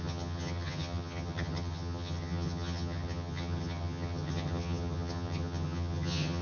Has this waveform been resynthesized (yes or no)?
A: yes